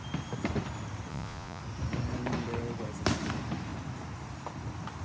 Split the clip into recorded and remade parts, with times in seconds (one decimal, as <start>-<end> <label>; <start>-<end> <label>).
0.0-1.1 recorded; 1.1-1.6 remade; 1.6-5.0 recorded